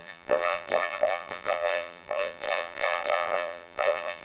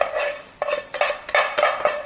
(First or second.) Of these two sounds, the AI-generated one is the first